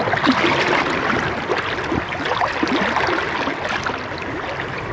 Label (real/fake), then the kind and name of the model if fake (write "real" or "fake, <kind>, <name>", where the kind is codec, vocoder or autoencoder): real